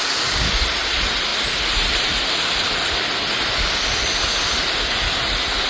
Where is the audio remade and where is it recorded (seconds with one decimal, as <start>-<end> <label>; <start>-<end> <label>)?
0.0-5.7 recorded